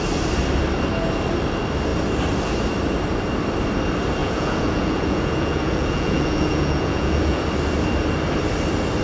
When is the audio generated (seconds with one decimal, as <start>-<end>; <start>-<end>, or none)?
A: 4.2-7.4